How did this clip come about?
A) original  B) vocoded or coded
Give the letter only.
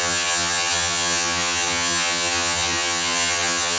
B